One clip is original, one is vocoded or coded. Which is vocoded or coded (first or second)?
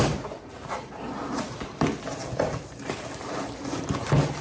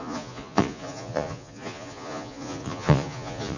second